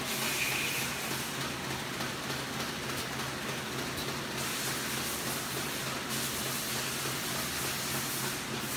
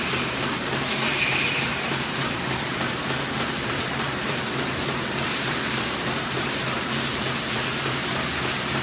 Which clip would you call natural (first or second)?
first